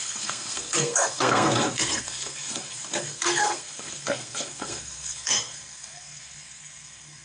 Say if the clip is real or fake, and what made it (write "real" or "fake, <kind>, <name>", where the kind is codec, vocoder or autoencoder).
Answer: fake, codec, SNAC